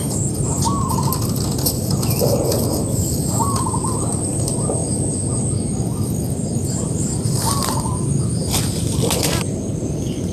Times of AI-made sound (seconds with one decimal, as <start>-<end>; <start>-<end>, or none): none